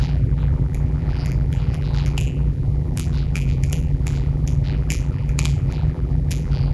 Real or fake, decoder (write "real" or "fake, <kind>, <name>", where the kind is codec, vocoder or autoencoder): fake, vocoder, BigVGAN v2